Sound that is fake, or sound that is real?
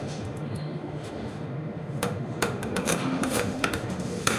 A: fake